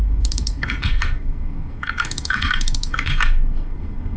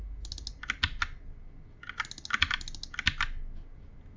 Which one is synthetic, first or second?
first